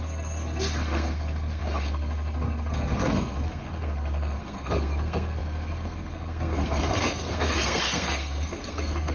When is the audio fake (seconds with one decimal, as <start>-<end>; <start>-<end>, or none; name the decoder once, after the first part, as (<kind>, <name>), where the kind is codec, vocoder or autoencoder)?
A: 0.0-9.1 (codec, SNAC)